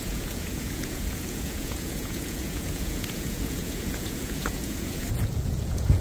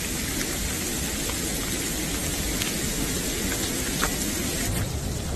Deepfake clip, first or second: first